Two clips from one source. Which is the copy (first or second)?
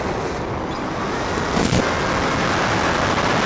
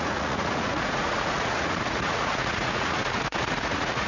second